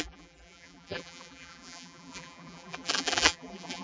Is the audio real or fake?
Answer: fake